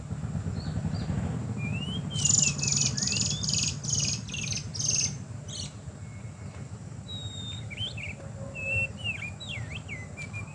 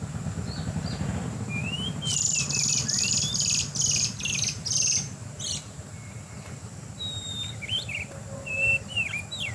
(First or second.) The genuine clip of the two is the first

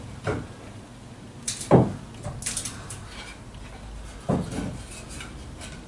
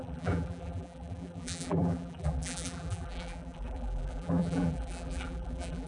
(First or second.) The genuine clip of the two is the first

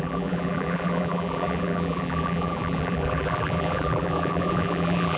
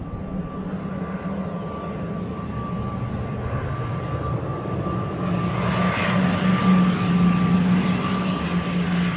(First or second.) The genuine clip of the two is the second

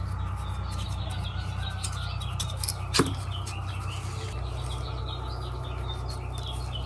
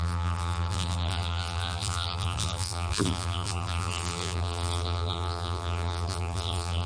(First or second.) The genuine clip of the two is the first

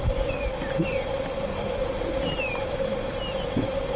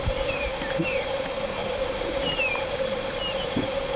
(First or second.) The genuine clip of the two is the first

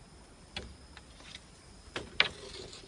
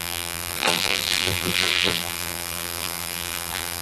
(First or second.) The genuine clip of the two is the first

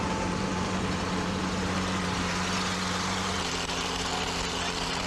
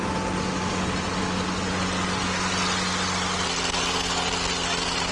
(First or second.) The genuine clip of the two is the second